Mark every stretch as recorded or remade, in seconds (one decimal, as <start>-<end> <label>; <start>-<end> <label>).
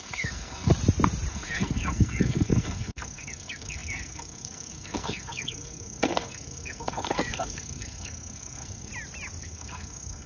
0.0-0.7 remade; 0.7-1.3 recorded; 1.3-8.9 remade; 8.9-9.4 recorded; 9.4-10.3 remade